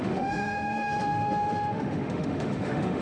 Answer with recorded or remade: remade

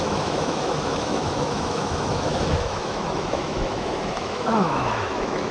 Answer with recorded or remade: remade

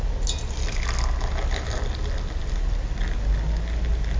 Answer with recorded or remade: recorded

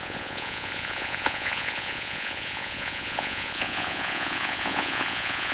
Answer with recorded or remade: remade